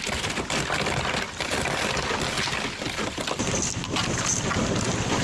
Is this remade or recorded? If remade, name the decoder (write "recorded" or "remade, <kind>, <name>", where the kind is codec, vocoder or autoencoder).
recorded